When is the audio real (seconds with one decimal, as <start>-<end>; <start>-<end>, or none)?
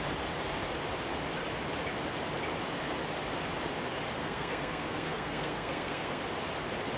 0.0-4.2; 6.2-7.0